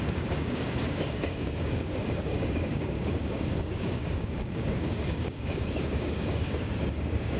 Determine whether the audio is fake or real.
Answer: fake